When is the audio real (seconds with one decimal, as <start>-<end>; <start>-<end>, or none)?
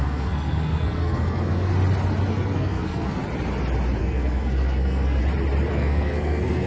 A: 1.7-2.3; 3.2-4.0; 5.2-5.7